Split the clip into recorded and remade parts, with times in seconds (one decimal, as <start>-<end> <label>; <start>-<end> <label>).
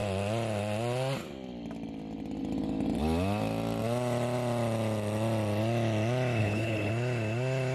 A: 0.0-6.4 recorded; 6.4-6.9 remade; 6.9-7.7 recorded